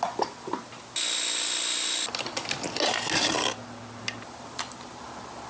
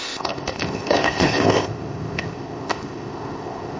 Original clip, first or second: first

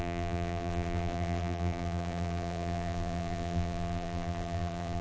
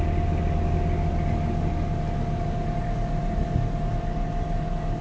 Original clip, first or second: second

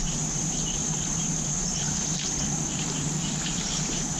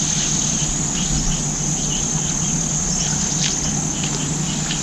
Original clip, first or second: second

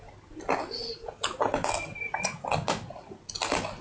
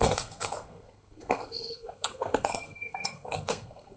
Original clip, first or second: first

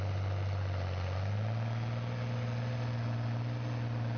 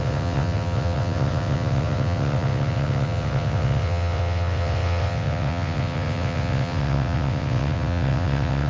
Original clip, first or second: first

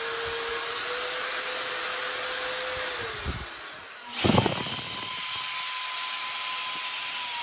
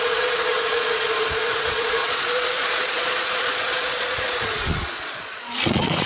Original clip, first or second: first